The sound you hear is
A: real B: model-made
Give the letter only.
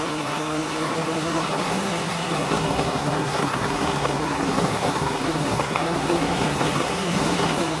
B